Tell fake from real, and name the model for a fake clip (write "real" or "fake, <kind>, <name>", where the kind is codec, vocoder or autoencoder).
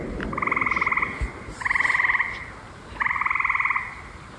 real